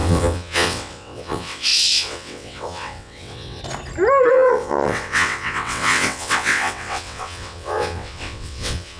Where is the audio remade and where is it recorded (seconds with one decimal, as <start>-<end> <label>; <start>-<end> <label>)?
0.0-3.6 remade; 3.6-4.3 recorded; 4.3-9.0 remade